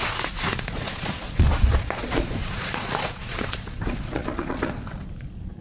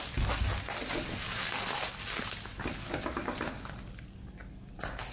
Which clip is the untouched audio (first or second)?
second